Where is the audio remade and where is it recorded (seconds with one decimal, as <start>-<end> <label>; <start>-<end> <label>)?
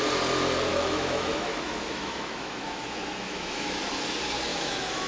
0.0-0.7 recorded; 0.7-3.8 remade; 3.8-4.5 recorded; 4.5-5.1 remade